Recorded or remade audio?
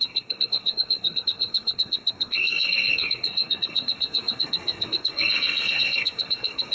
remade